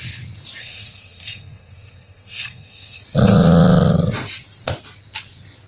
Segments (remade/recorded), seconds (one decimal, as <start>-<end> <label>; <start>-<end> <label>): 0.0-0.6 recorded; 0.6-3.0 remade; 3.0-5.7 recorded